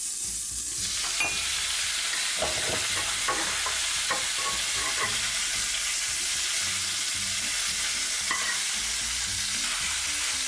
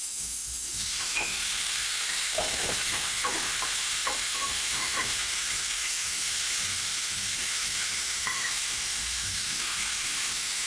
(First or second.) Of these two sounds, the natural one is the first